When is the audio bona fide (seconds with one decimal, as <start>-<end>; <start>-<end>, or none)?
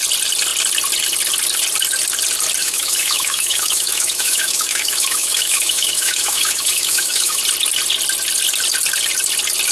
0.0-2.6; 7.4-9.7